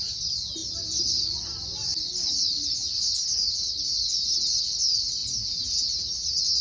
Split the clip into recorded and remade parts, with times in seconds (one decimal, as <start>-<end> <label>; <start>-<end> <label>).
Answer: 0.0-6.6 recorded